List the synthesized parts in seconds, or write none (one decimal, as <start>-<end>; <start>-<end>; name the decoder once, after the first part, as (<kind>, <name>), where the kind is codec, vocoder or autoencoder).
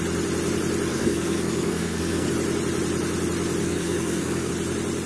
0.9-2.3 (codec, SNAC); 3.6-4.5